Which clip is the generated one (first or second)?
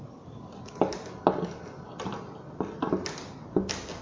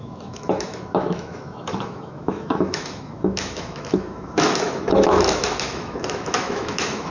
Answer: second